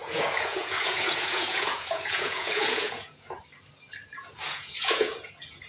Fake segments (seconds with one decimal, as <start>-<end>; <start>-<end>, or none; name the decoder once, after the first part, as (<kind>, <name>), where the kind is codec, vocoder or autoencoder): 0.0-3.4 (vocoder, Vocos); 4.0-5.7